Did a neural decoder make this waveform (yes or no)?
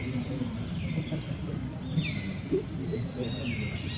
no